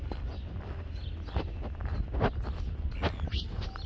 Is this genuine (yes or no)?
yes